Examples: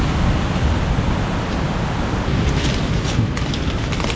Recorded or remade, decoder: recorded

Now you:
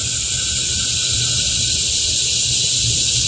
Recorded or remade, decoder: recorded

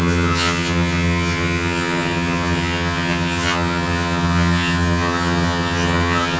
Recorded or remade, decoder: remade, vocoder, HiFi-GAN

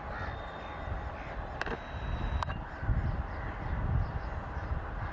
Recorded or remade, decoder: recorded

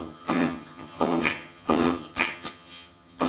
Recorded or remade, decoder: remade, vocoder, HiFi-GAN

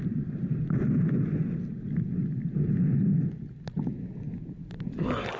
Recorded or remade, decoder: recorded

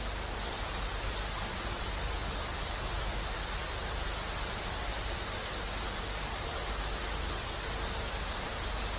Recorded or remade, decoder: recorded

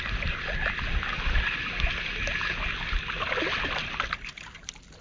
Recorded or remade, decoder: recorded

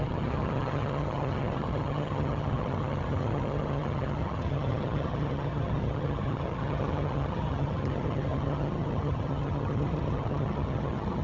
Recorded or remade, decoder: remade, vocoder, HiFi-GAN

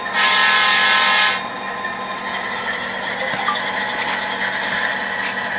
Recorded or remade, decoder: recorded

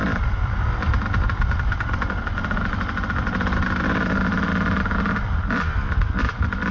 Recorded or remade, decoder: recorded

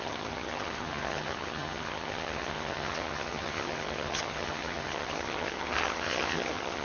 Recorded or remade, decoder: remade, vocoder, HiFi-GAN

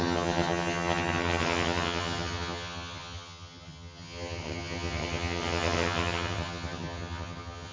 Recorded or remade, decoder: remade, vocoder, HiFi-GAN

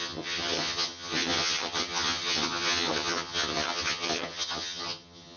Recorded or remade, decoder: remade, vocoder, HiFi-GAN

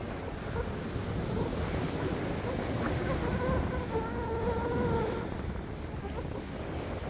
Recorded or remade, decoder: recorded